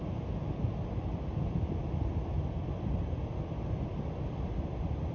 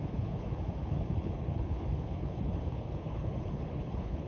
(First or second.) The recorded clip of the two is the first